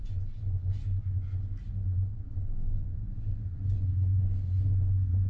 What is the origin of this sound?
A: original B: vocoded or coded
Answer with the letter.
B